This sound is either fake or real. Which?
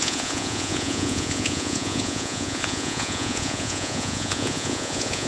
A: fake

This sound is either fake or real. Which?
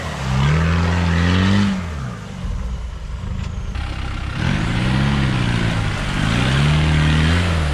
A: real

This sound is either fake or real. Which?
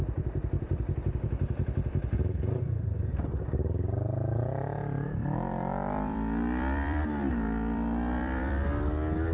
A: fake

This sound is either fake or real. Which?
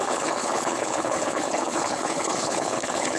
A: fake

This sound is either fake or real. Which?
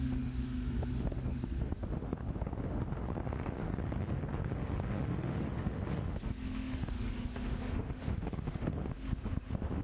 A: fake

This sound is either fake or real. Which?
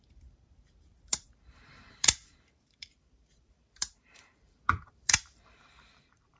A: fake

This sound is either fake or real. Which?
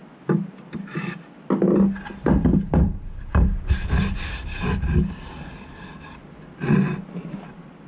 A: real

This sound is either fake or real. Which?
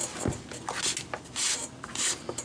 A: real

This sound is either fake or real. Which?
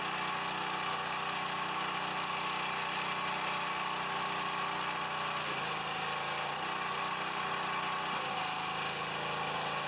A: real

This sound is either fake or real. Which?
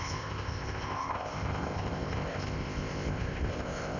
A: fake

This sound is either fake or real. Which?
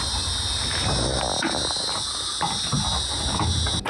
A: real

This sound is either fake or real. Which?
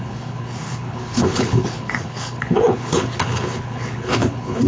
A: fake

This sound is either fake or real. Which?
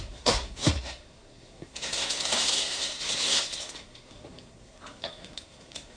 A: fake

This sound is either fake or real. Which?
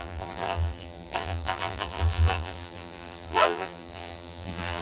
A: fake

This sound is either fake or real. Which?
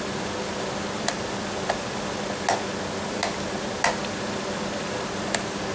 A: real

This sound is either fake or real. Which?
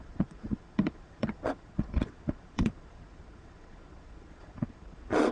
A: fake